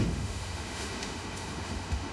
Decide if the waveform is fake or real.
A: fake